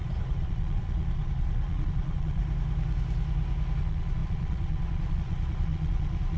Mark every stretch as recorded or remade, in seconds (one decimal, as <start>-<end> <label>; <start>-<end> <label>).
0.0-2.4 remade; 2.4-3.8 recorded; 3.8-6.4 remade